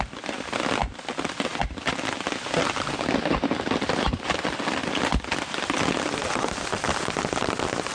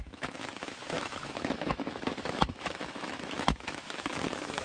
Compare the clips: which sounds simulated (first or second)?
second